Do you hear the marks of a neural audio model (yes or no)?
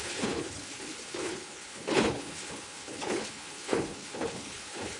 yes